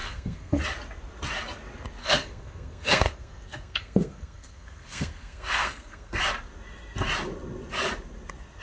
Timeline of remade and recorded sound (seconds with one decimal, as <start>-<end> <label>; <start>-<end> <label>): 0.0-0.6 remade; 0.6-2.0 recorded; 2.0-6.2 remade; 6.2-8.6 recorded